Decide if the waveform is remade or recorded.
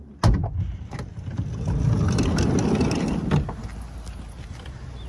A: recorded